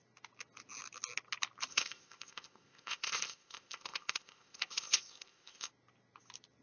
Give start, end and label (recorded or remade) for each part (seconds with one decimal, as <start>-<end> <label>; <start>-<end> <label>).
0.0-1.7 recorded; 1.7-5.7 remade; 5.7-6.6 recorded